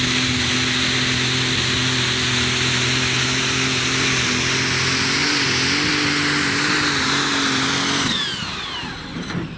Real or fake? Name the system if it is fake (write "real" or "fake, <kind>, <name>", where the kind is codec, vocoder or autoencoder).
real